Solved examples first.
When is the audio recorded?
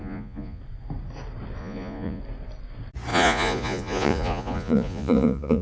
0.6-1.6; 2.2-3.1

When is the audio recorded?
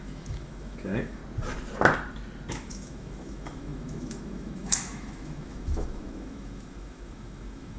1.2-2.5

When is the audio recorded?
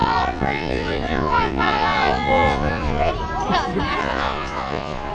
3.1-4.0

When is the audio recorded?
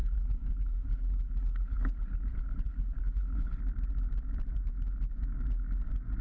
3.6-6.2